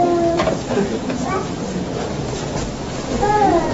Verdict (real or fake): real